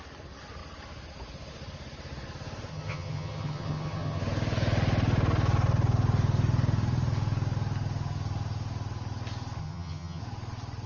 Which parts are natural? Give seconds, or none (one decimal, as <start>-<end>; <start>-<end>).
0.0-2.7; 4.2-9.6; 10.2-10.9